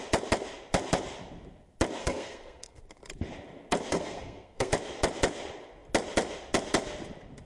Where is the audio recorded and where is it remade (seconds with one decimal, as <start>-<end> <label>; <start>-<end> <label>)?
0.0-2.0 recorded; 2.0-2.8 remade; 2.8-3.9 recorded; 3.9-4.7 remade; 4.7-7.5 recorded